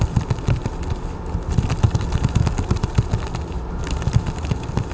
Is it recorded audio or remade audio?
recorded